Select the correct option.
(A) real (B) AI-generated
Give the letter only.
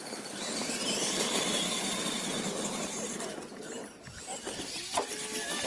A